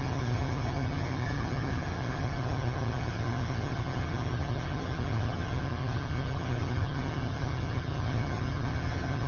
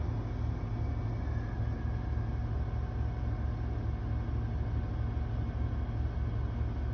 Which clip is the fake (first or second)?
first